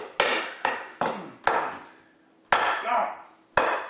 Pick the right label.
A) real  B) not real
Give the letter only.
A